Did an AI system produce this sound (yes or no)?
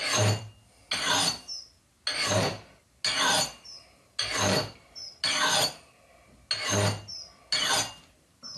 no